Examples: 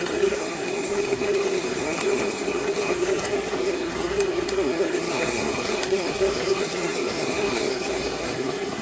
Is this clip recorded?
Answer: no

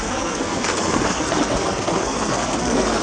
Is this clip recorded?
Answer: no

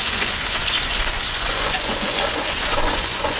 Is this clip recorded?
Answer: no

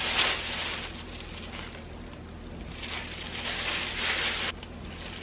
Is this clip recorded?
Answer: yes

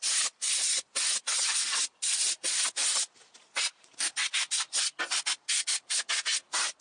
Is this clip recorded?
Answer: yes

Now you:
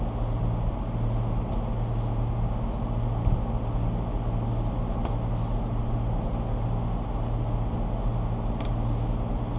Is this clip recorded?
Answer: yes